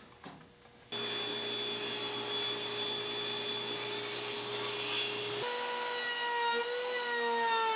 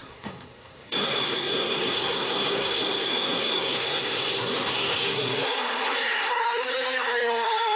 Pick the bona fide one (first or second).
first